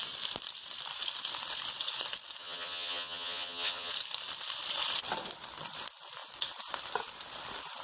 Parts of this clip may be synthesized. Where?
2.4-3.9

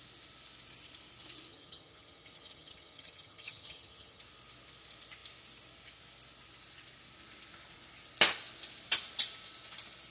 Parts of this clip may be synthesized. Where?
1.5-4.2

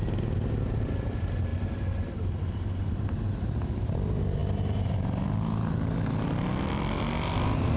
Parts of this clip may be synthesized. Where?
none

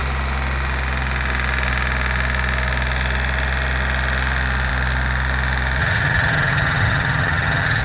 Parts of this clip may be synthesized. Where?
5.8-7.8

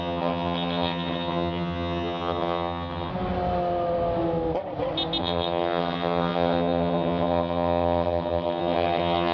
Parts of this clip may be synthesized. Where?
0.0-3.1; 5.2-9.3